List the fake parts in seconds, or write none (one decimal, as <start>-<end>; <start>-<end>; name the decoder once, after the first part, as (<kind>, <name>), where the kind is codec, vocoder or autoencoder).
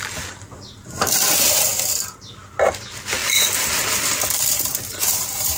0.0-1.7 (vocoder, BigVGAN v2); 2.7-5.6